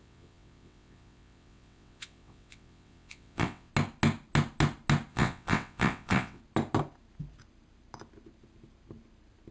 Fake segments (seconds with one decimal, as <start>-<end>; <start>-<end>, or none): 0.0-3.7; 5.1-6.4